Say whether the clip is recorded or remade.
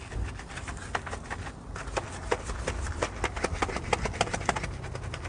recorded